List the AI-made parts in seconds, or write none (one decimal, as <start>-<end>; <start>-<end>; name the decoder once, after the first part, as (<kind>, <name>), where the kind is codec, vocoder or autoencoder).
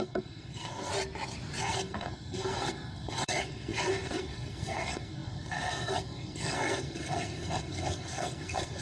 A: 0.0-0.9 (codec, SNAC); 1.6-8.8